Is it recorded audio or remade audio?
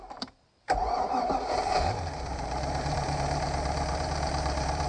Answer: remade